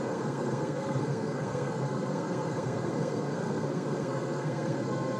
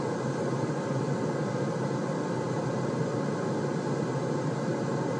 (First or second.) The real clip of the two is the second